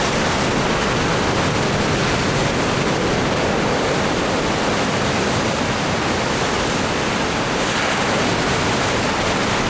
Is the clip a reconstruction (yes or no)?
no